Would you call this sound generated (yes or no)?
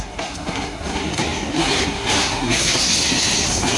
yes